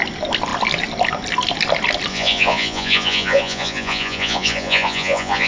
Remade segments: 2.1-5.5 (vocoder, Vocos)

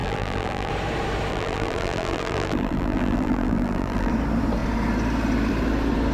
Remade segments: 0.0-0.7 (vocoder, BigVGAN v2); 1.3-4.1

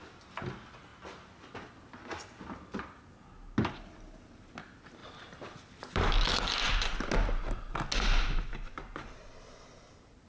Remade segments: 5.0-6.0 (vocoder, BigVGAN v2)

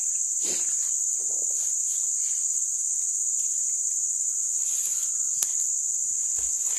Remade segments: none

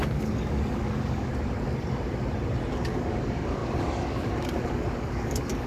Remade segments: 0.0-1.3 (codec, DAC); 2.7-5.7

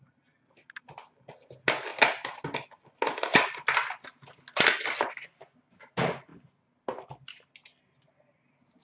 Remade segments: none

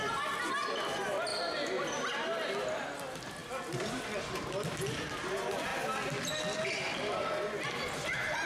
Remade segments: none

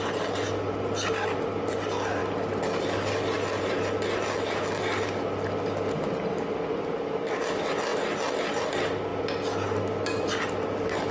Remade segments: none